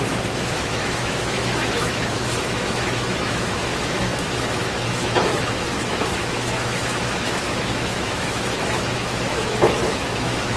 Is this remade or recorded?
remade